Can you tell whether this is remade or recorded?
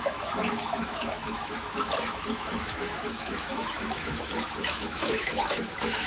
remade